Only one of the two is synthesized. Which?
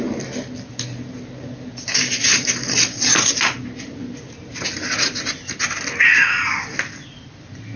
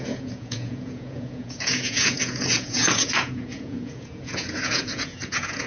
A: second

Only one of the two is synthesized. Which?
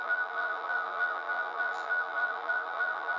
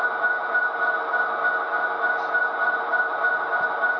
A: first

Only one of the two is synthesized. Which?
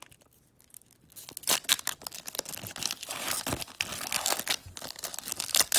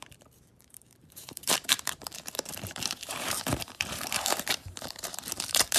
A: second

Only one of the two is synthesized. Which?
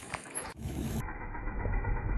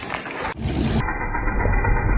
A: first